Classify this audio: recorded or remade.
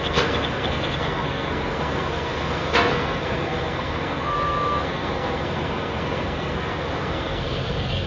remade